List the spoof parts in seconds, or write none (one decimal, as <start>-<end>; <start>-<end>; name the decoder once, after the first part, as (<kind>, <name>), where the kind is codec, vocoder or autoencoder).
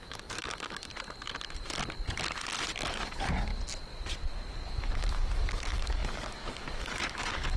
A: 0.0-0.9 (codec, DAC); 2.9-3.5; 4.8-7.6